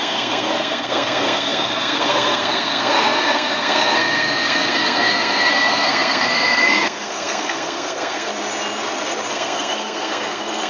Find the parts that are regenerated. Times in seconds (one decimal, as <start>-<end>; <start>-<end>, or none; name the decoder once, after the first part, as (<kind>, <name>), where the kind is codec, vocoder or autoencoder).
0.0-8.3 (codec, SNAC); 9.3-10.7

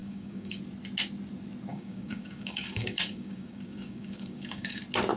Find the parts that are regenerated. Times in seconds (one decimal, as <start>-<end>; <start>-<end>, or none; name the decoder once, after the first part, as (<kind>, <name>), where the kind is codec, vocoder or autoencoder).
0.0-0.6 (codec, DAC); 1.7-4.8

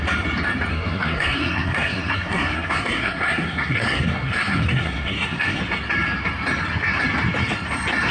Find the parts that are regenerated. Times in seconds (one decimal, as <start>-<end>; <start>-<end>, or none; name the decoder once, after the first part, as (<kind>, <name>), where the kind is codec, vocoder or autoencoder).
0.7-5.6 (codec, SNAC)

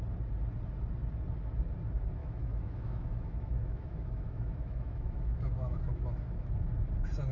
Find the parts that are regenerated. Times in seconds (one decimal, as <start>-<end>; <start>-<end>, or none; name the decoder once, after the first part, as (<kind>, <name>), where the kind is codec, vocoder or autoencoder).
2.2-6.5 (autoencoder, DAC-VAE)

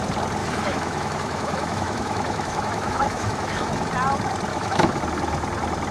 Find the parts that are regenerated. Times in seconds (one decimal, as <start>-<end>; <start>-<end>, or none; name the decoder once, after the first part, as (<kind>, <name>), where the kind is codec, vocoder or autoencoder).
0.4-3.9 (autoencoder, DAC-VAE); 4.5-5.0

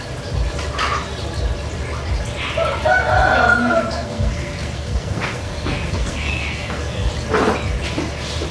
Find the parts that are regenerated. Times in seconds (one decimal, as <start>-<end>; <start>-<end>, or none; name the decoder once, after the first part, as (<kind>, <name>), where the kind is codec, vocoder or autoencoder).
3.6-7.1 (codec, SNAC)

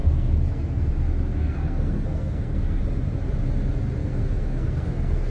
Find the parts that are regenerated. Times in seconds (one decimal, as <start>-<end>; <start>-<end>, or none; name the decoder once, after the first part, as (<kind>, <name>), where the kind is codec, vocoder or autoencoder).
0.0-0.9 (codec, SNAC); 1.3-2.8; 4.0-5.3

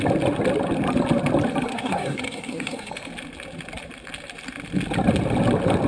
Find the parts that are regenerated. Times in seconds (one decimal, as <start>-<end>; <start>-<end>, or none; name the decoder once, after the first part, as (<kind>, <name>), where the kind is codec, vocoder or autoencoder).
1.7-2.9 (codec, SNAC)